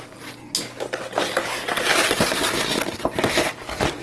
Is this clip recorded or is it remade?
recorded